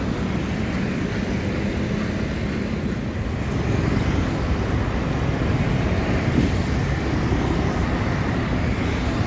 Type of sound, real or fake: real